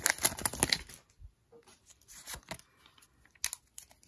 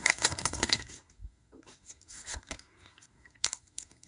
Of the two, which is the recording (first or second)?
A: first